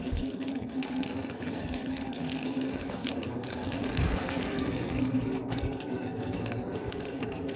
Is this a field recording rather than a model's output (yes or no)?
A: no